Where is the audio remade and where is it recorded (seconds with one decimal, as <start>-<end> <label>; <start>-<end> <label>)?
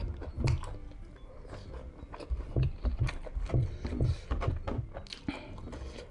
0.0-0.8 recorded; 0.8-4.5 remade; 4.5-6.1 recorded